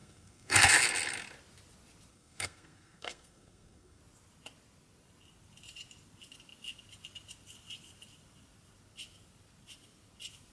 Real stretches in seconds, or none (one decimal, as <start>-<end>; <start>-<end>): 0.7-2.1; 4.0-10.5